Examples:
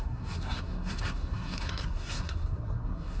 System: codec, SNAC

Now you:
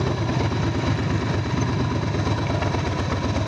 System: none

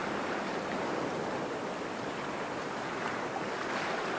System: none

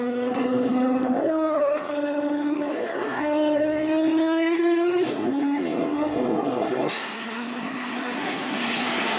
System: codec, SNAC